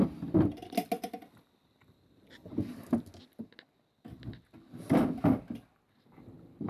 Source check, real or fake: real